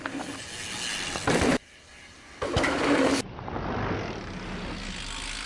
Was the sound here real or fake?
real